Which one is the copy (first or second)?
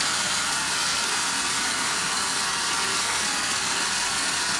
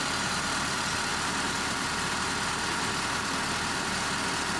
first